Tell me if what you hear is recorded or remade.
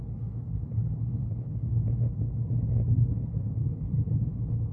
remade